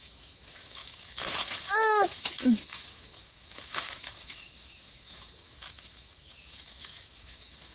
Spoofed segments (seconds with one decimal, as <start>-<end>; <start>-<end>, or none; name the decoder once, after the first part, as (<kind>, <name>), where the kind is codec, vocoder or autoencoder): 0.0-7.7 (autoencoder, DAC-VAE)